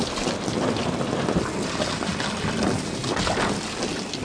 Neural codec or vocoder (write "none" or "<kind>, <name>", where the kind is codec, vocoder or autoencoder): none